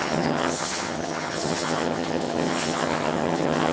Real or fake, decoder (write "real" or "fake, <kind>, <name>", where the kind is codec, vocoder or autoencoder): fake, vocoder, HiFi-GAN